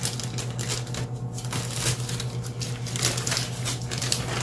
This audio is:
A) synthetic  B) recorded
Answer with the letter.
B